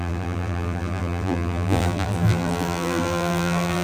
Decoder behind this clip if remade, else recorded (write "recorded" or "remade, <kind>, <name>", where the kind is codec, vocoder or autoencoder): remade, vocoder, BigVGAN v2